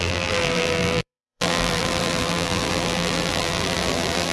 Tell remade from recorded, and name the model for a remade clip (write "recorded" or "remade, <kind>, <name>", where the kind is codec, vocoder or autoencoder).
remade, vocoder, BigVGAN v2